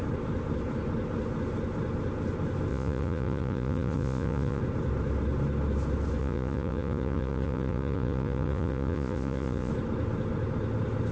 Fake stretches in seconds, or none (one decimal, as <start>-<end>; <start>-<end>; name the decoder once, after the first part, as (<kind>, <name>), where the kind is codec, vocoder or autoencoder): 2.7-4.6 (vocoder, Vocos); 6.2-9.7